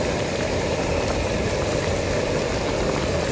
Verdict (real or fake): real